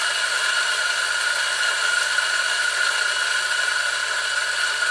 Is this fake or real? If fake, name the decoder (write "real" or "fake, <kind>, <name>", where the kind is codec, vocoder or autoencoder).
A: real